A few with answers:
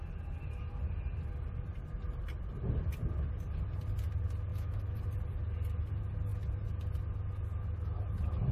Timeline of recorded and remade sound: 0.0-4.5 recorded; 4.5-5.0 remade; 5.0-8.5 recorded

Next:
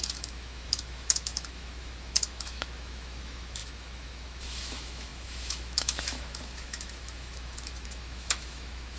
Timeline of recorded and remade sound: 0.0-9.0 remade

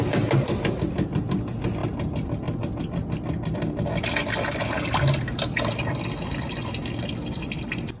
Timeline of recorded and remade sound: 0.0-8.0 recorded

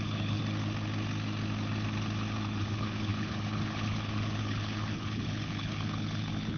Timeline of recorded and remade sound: 0.0-0.4 remade; 0.4-2.6 recorded; 2.6-6.6 remade

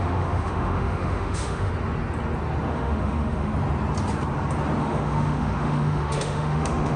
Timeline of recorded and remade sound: 0.0-1.7 remade; 1.7-2.7 recorded; 2.7-3.5 remade; 3.5-4.8 recorded; 4.8-7.0 remade

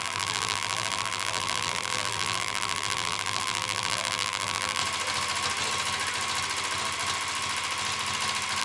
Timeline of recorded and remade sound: 0.0-4.8 remade; 4.8-8.6 recorded